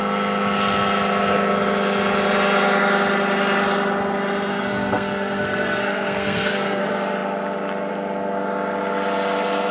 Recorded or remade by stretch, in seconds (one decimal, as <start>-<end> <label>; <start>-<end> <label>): 0.0-4.5 recorded; 4.5-6.8 remade; 6.8-9.7 recorded